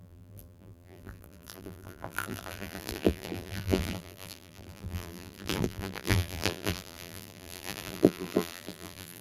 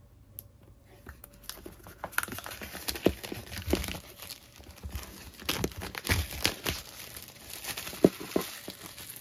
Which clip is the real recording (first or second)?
second